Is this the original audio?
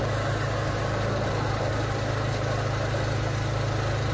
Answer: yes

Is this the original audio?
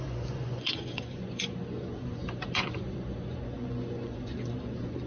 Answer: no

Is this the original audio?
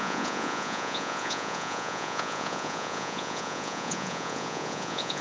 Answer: no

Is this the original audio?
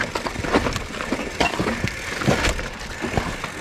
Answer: yes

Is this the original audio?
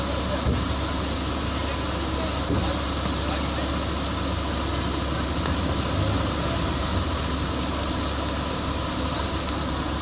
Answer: yes